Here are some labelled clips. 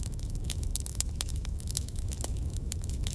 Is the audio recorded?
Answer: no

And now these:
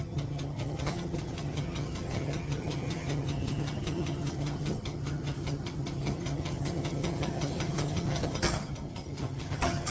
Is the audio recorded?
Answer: no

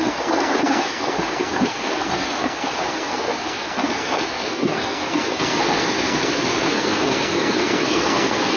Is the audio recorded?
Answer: no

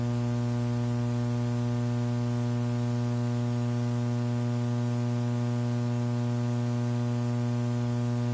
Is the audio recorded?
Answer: yes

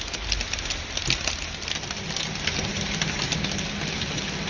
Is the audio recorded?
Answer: yes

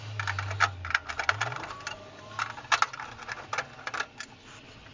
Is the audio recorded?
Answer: yes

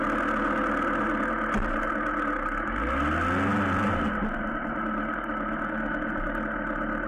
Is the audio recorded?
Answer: yes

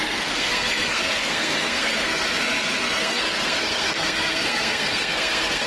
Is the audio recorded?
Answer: no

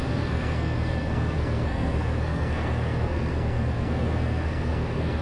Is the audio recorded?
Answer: no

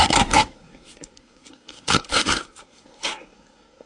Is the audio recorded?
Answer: no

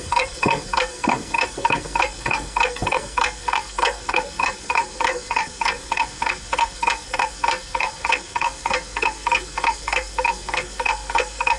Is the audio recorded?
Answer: no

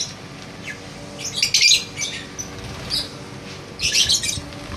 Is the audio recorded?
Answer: yes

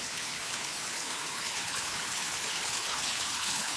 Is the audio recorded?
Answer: no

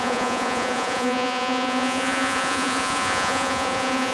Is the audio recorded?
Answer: no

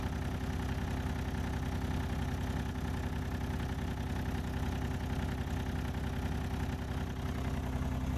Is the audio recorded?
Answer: yes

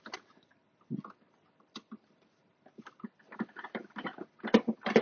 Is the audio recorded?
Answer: no